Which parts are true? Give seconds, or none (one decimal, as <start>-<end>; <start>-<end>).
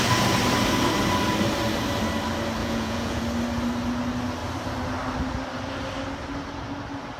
0.0-2.6; 3.2-7.2